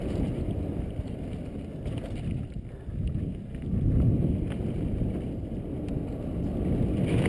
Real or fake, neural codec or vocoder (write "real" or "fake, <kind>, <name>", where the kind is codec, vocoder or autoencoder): real